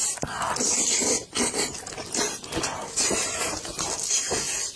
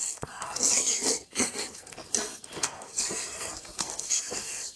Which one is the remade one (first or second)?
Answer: second